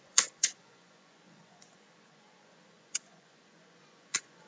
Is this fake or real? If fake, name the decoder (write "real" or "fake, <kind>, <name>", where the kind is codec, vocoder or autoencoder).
fake, vocoder, Vocos